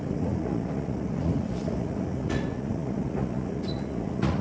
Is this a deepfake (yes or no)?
yes